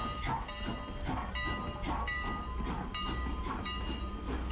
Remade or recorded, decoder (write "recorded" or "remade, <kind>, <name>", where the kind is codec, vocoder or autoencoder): recorded